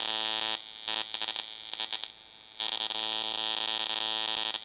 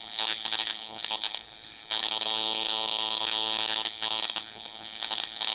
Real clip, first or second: first